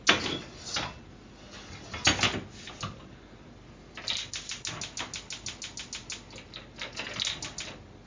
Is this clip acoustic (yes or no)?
yes